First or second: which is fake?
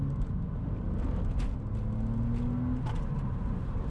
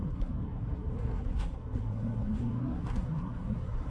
second